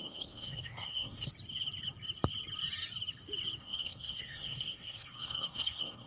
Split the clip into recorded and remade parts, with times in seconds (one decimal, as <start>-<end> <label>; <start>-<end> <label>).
0.0-1.3 remade; 1.3-3.6 recorded; 3.6-6.1 remade